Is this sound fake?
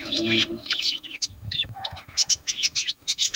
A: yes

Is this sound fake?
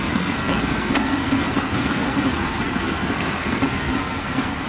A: yes